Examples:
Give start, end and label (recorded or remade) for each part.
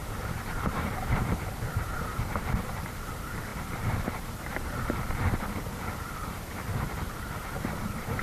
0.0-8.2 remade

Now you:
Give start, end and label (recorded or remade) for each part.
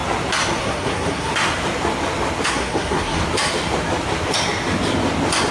0.0-0.6 recorded; 0.6-1.3 remade; 1.3-2.5 recorded; 2.5-3.2 remade; 3.2-5.5 recorded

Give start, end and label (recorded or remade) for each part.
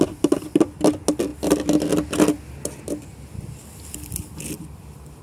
0.0-5.2 recorded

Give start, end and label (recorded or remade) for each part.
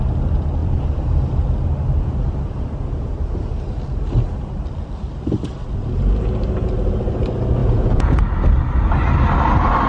0.0-7.6 recorded; 7.6-8.2 remade; 8.2-9.9 recorded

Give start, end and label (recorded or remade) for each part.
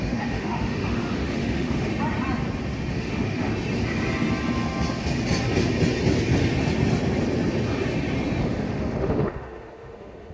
0.0-1.9 remade; 1.9-2.9 recorded; 2.9-3.5 remade; 3.5-8.4 recorded; 8.4-10.3 remade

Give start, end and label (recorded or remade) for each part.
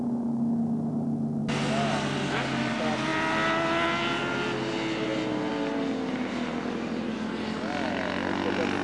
0.0-8.8 recorded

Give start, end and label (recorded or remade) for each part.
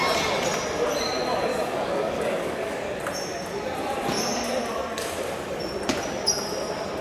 0.0-1.5 recorded; 1.5-3.0 remade; 3.0-7.0 recorded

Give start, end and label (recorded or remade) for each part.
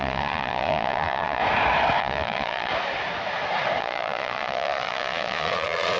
0.0-1.4 remade; 1.4-2.0 recorded; 2.0-2.7 remade; 2.7-3.8 recorded; 3.8-6.0 remade